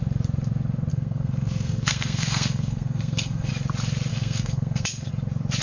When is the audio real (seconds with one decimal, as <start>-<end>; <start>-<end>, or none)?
0.0-0.9; 3.5-4.1; 5.1-5.6